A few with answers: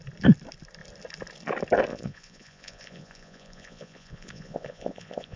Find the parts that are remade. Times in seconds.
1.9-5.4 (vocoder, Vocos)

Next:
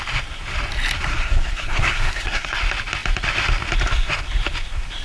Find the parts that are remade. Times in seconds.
1.1-2.6 (codec, SNAC)

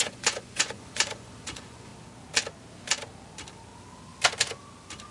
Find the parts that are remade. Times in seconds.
0.0-1.9 (vocoder, Vocos)

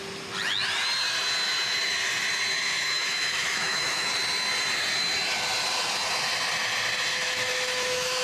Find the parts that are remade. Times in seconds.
2.5-4.1 (autoencoder, DAC-VAE); 7.1-8.2

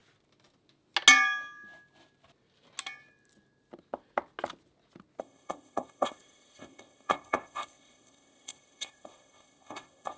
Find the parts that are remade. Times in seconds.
5.2-10.2 (codec, ZipCodec)